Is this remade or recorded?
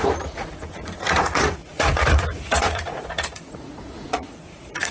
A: remade